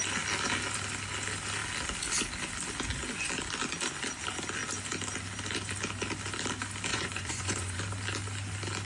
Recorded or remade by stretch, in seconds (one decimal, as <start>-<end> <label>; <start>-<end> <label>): 0.0-6.9 recorded; 6.9-7.8 remade; 7.8-8.8 recorded